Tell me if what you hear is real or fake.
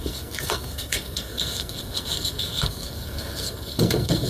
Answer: fake